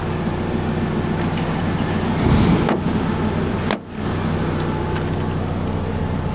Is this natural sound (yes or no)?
yes